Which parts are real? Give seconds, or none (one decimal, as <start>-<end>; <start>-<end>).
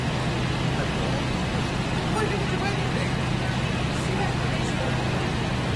0.0-5.8